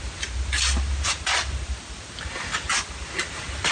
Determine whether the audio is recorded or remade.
recorded